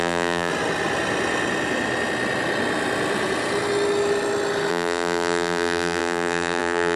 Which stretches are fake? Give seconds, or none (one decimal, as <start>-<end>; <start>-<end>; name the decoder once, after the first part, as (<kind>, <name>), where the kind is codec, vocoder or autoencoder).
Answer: 0.0-0.5 (vocoder, BigVGAN v2); 4.7-7.0